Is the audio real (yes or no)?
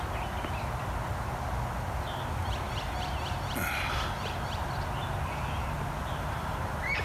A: yes